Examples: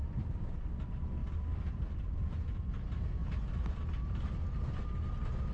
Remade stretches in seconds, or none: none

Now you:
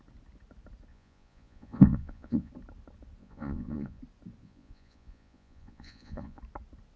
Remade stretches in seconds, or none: 0.9-2.5 (vocoder, Vocos); 3.2-4.0; 4.4-6.4

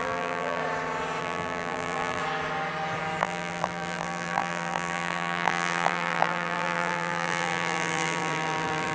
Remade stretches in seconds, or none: 0.0-0.6 (vocoder, BigVGAN v2); 1.2-2.2; 3.2-8.9

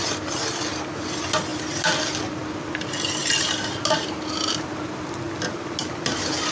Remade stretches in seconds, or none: none

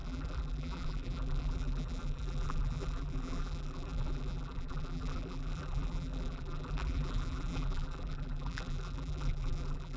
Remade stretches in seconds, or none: 0.0-10.0 (vocoder, BigVGAN v2)

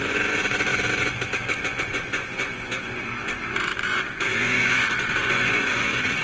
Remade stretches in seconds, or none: 0.0-6.2 (vocoder, Vocos)